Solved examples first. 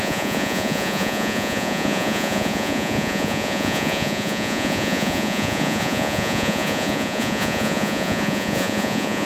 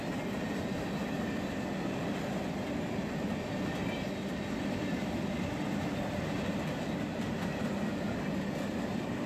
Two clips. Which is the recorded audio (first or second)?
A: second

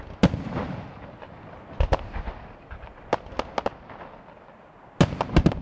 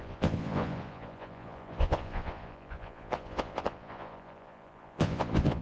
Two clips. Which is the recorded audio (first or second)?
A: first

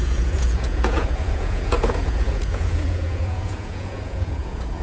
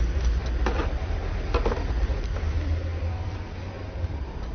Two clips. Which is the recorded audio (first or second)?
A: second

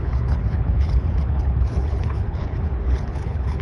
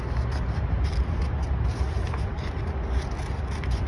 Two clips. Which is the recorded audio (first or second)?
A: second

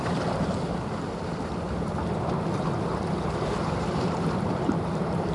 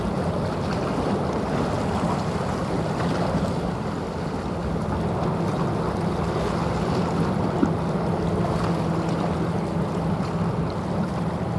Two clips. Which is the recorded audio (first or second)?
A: second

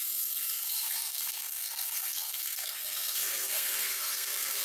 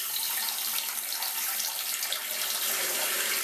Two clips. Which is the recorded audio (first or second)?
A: second